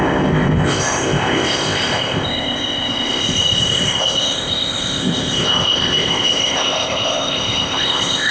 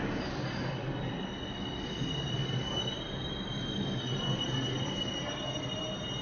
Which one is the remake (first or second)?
first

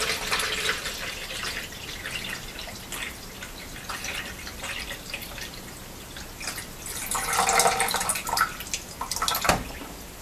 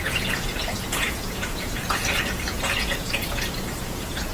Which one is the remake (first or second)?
second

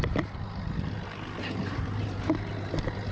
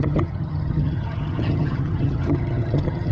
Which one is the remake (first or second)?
second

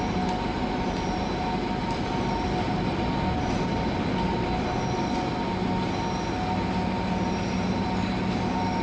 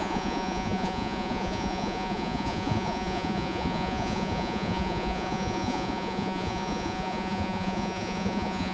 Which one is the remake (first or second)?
second